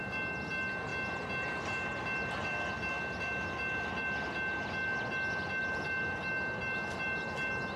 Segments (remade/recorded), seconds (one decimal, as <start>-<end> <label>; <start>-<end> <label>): 0.0-7.8 recorded

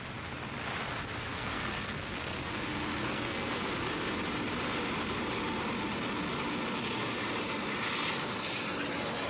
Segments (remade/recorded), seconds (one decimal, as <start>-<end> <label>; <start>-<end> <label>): 0.0-1.3 recorded; 1.3-2.5 remade; 2.5-3.0 recorded; 3.0-3.6 remade; 3.6-9.3 recorded

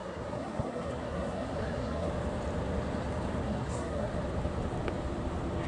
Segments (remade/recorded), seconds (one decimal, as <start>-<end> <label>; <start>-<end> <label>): 0.0-2.1 remade; 2.1-3.4 recorded; 3.4-4.1 remade; 4.1-5.7 recorded

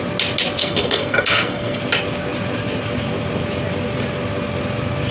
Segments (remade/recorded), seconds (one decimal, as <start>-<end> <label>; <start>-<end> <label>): 0.0-0.6 recorded; 0.6-1.8 remade; 1.8-5.1 recorded

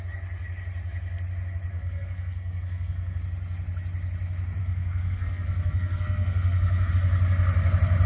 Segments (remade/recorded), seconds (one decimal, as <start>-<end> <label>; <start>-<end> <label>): 0.0-1.7 recorded; 1.7-3.2 remade; 3.2-4.6 recorded; 4.6-6.9 remade; 6.9-8.1 recorded

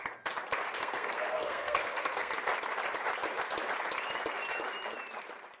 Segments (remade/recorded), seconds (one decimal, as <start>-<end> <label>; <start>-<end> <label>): 0.0-0.8 recorded; 0.8-2.3 remade; 2.3-5.6 recorded

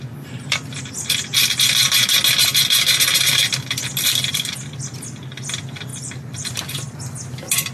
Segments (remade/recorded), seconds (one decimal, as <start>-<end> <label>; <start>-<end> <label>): 0.0-7.7 recorded

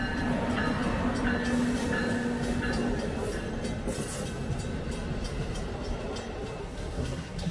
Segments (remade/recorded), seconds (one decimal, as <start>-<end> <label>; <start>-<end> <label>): 0.0-6.6 recorded; 6.6-7.5 remade